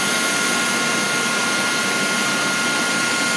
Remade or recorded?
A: recorded